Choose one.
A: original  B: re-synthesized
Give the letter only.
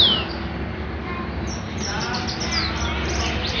A